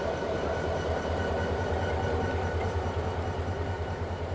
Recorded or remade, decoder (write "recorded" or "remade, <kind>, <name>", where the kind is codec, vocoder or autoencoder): remade, vocoder, BigVGAN v2